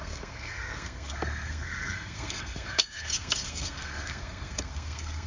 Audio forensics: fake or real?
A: fake